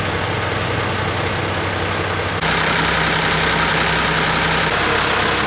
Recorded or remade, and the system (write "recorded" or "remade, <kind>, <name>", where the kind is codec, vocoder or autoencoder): recorded